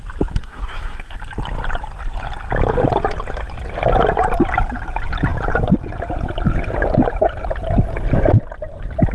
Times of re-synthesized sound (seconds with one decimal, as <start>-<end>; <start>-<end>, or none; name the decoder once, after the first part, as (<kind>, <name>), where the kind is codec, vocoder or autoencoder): 0.4-1.2 (codec, SNAC)